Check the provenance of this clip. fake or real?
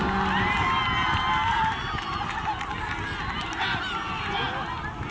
real